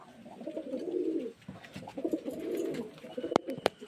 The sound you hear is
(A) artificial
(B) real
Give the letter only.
B